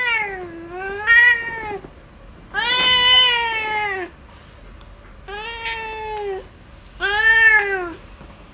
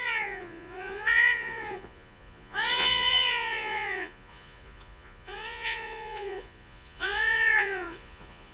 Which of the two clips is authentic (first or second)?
first